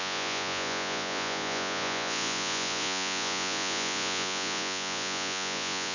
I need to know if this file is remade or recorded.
remade